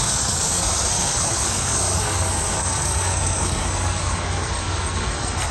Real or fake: fake